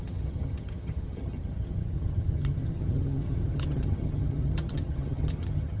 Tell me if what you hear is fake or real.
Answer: fake